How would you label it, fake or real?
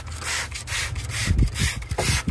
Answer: real